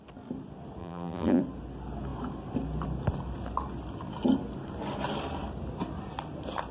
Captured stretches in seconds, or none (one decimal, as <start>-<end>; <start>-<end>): 0.0-0.8; 1.4-6.7